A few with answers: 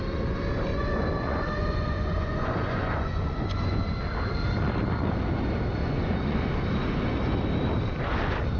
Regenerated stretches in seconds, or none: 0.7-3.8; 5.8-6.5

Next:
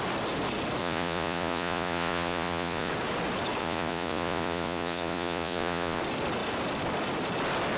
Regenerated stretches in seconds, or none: 0.8-2.9; 3.6-6.0